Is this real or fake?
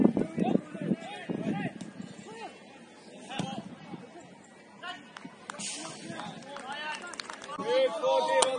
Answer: real